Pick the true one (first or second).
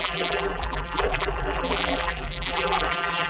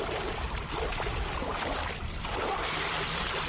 second